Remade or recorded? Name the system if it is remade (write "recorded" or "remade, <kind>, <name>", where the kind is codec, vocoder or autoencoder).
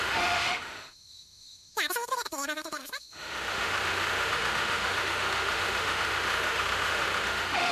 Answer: remade, autoencoder, DAC-VAE